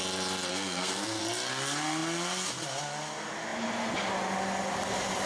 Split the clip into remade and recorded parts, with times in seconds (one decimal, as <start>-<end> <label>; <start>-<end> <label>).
0.0-0.5 recorded; 0.5-1.2 remade; 1.2-5.3 recorded